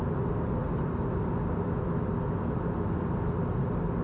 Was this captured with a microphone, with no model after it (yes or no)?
yes